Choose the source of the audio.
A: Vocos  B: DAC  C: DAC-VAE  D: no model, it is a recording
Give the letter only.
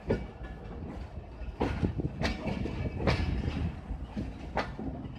D